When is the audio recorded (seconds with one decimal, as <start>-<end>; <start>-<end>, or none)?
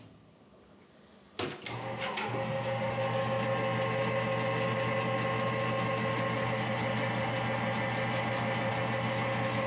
0.0-9.7